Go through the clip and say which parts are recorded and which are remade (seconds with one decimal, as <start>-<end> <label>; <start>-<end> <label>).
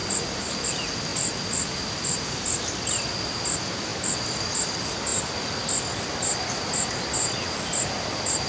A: 0.0-0.7 remade; 0.7-1.1 recorded; 1.1-2.4 remade; 2.4-8.5 recorded